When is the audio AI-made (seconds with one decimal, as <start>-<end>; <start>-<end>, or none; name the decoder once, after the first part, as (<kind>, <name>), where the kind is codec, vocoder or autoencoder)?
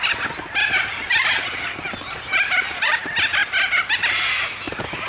none